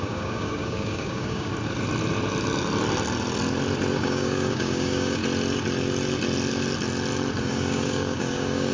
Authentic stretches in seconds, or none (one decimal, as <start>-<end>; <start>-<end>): 1.5-3.9; 5.2-7.4